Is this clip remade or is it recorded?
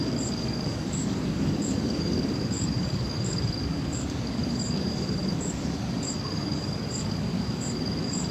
remade